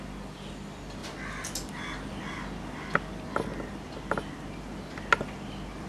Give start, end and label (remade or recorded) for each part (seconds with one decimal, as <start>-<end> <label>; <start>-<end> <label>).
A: 0.0-5.9 recorded